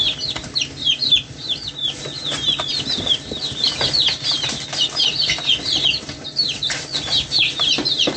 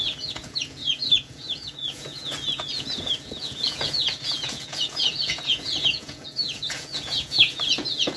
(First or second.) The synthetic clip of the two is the second